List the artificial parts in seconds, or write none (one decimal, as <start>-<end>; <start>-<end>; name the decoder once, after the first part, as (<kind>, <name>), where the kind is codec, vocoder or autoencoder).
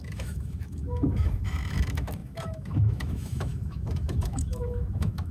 0.0-5.3 (autoencoder, DAC-VAE)